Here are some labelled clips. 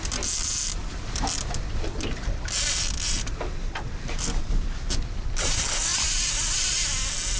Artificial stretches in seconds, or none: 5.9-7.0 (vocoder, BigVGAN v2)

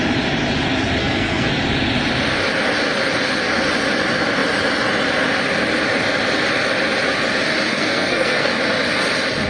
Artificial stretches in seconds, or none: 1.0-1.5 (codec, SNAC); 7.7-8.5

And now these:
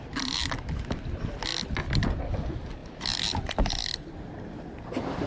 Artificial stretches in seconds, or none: none

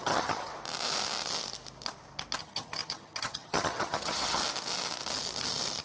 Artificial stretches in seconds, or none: 0.0-0.5 (vocoder, HiFi-GAN); 2.4-4.4

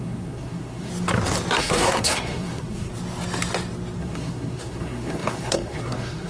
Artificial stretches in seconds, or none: 0.0-0.9 (codec, SNAC); 1.6-2.9; 4.0-6.3

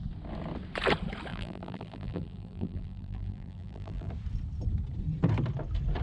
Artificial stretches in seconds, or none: 1.3-4.1 (vocoder, BigVGAN v2)